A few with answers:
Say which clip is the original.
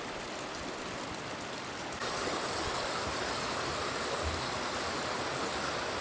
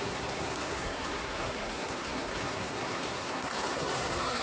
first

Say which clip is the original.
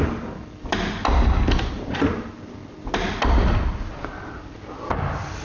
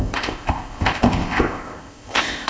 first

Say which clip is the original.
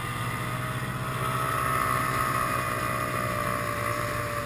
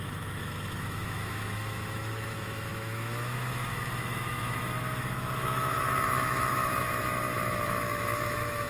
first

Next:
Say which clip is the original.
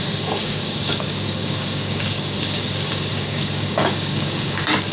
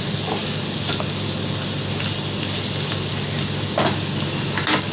second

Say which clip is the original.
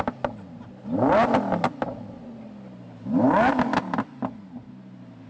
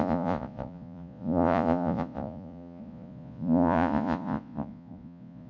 first